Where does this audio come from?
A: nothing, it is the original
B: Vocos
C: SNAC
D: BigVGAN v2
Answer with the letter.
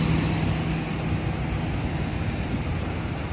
A